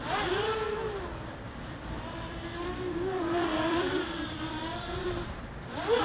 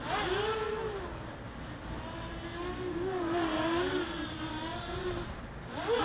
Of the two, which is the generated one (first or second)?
first